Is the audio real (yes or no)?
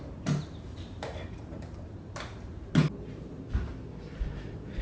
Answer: no